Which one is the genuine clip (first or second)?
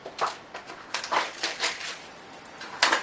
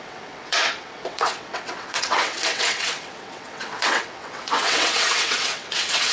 first